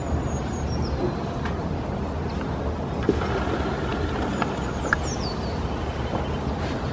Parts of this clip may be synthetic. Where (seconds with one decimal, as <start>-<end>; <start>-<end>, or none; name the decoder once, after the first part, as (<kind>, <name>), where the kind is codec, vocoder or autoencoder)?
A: none